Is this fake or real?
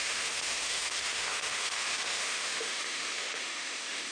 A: fake